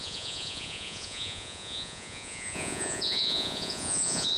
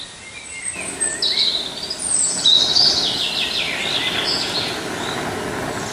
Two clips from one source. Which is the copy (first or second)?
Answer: first